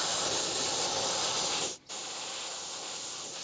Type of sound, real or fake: fake